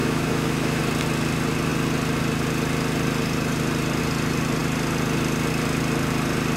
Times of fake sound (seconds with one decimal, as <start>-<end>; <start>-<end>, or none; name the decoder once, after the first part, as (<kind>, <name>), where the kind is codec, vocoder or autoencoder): 0.0-0.8 (autoencoder, DAC-VAE)